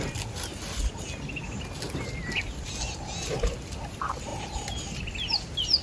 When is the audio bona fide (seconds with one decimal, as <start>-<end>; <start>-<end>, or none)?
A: 0.0-5.8